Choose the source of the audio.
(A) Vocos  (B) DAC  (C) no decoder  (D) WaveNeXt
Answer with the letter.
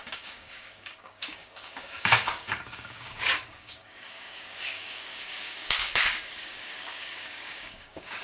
B